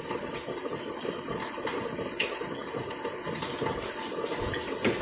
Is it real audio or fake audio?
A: fake